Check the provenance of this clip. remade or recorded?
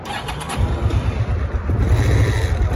recorded